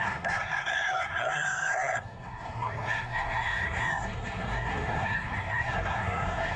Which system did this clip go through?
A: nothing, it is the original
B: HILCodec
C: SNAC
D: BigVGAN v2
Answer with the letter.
C